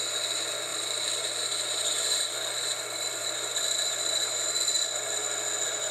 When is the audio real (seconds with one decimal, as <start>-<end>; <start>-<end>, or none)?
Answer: 0.0-0.7; 1.3-3.2; 4.6-5.9

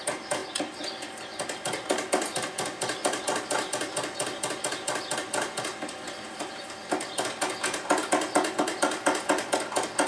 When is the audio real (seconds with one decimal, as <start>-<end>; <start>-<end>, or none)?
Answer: 0.0-10.1